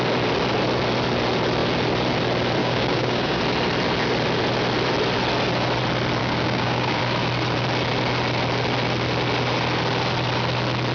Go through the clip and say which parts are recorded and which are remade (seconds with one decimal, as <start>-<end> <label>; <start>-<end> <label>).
0.0-2.6 recorded; 2.6-3.4 remade; 3.4-6.2 recorded; 6.2-7.0 remade; 7.0-10.9 recorded